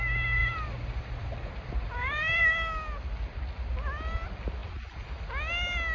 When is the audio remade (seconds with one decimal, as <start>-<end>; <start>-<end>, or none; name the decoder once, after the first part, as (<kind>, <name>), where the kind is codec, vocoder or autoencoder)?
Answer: 0.4-2.4 (vocoder, BigVGAN v2); 4.6-5.2

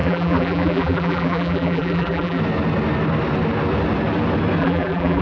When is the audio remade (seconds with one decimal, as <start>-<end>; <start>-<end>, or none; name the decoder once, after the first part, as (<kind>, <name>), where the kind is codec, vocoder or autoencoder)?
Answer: 0.0-2.4 (vocoder, BigVGAN v2); 4.6-5.2

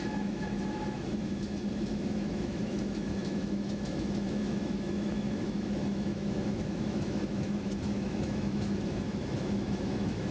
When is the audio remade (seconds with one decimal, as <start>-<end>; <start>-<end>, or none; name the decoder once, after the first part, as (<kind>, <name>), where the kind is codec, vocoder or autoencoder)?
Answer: 0.0-10.3 (autoencoder, DAC-VAE)

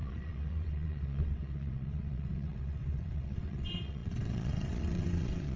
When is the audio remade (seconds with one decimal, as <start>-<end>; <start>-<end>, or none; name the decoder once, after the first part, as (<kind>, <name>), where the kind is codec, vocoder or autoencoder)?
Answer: 0.0-5.6 (vocoder, WaveNeXt)